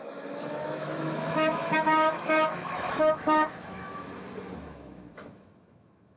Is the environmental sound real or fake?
fake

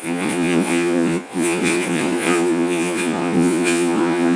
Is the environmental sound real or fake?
fake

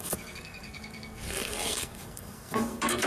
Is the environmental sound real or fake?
fake